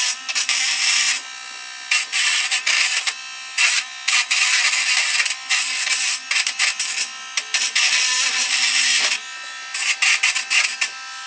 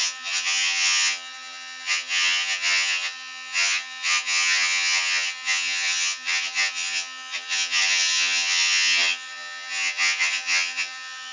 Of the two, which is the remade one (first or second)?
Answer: second